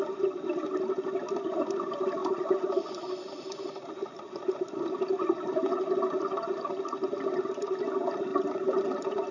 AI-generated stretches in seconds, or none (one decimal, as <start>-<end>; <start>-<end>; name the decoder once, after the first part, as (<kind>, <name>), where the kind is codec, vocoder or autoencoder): 2.2-5.7 (vocoder, BigVGAN v2); 8.3-9.3